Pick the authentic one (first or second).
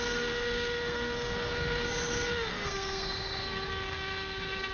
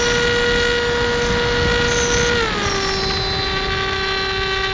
second